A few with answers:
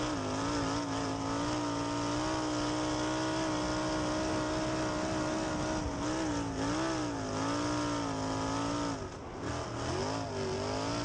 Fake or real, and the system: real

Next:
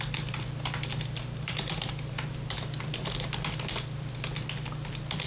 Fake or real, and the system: real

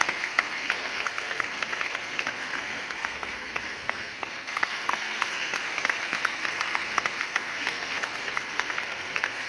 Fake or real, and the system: fake, codec, SNAC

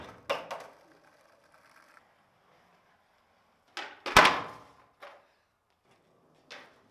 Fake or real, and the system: real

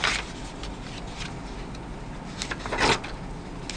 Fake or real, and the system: real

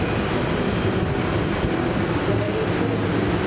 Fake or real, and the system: real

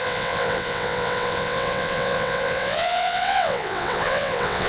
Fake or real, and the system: fake, vocoder, WaveNeXt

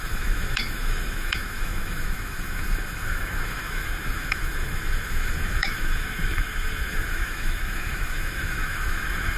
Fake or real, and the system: fake, autoencoder, DAC-VAE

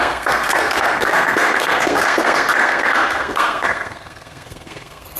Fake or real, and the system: fake, codec, SNAC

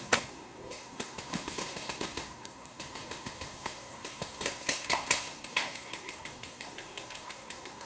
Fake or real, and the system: fake, codec, SNAC